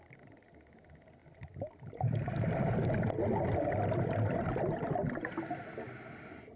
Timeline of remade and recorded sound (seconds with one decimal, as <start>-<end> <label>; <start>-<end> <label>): 0.0-6.6 recorded